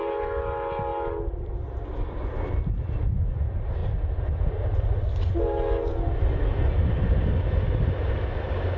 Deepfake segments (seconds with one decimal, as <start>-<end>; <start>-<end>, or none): none